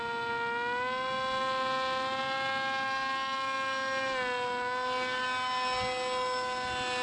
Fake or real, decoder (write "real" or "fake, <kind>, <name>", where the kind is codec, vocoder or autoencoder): real